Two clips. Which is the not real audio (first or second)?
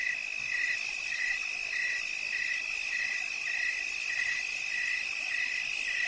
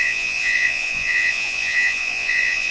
second